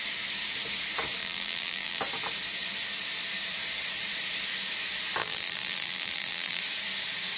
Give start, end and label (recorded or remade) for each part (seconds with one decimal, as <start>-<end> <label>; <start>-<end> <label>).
0.0-1.2 recorded; 1.2-2.0 remade; 2.0-5.2 recorded; 5.2-6.6 remade; 6.6-7.4 recorded